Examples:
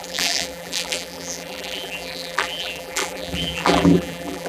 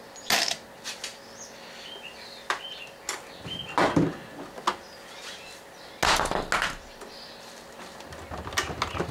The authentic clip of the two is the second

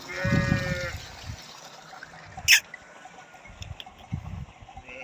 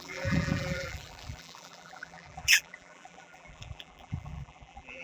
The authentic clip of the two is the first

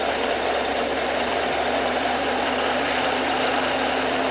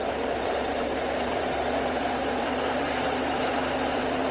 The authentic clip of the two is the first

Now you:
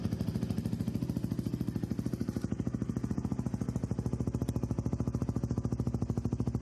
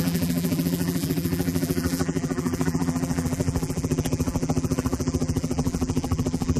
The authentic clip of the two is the first